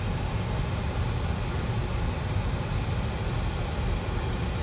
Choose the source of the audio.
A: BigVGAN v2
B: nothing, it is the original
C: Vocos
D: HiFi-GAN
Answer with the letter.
B